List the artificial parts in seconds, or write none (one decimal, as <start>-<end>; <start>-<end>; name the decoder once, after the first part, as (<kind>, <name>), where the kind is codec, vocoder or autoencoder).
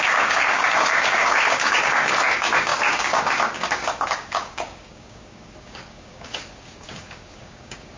0.0-8.0 (codec, DAC)